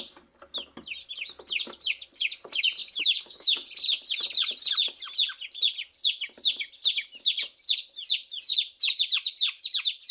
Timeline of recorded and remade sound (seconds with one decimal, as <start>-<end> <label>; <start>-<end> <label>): 0.0-2.8 recorded; 2.8-3.7 remade; 3.7-10.1 recorded